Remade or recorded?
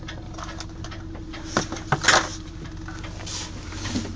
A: recorded